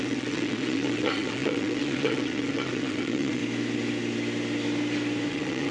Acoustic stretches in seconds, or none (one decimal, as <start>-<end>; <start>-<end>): 3.4-5.3